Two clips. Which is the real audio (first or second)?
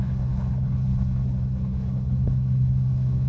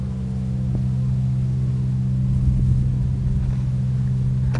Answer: second